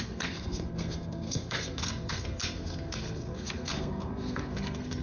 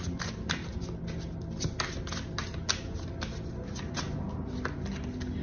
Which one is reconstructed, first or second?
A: first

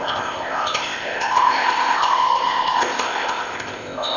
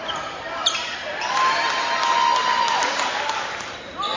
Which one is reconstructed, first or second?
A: first